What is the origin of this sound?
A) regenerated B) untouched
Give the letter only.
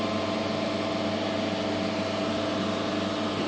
B